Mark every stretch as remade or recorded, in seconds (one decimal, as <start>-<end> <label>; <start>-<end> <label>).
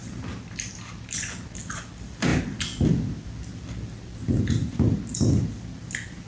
0.0-6.3 recorded